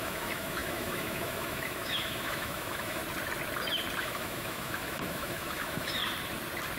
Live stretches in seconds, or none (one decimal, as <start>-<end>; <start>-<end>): 3.0-4.0; 6.0-6.8